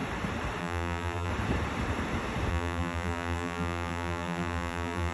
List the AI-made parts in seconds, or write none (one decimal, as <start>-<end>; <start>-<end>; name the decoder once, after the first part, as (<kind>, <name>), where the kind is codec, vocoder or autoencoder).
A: 0.6-1.3 (vocoder, BigVGAN v2); 2.5-5.1